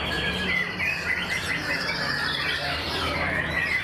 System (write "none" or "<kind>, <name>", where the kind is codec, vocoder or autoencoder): vocoder, BigVGAN v2